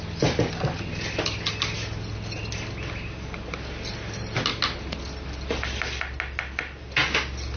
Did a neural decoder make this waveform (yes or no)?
no